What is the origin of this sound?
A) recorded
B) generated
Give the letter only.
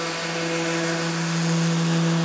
A